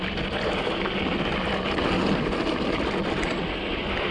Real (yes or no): yes